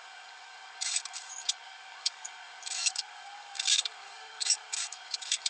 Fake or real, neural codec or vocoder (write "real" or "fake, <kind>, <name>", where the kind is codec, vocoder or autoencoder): fake, codec, DAC